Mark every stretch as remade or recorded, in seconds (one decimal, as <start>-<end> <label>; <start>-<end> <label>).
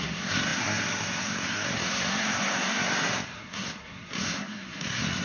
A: 0.0-5.2 remade